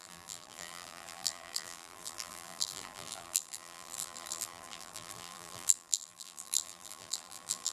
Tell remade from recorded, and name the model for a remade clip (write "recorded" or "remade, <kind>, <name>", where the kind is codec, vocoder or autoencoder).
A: remade, vocoder, BigVGAN v2